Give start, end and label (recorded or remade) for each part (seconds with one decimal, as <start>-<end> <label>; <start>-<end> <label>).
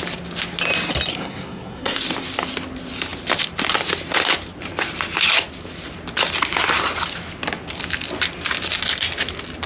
0.0-1.1 recorded; 1.1-2.0 remade; 2.0-9.7 recorded